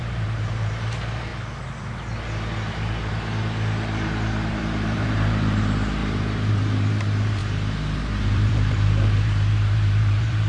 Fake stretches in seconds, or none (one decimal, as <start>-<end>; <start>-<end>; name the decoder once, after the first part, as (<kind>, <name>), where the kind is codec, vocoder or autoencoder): 0.0-1.3 (vocoder, BigVGAN v2); 4.5-6.0; 6.5-7.4; 8.2-10.5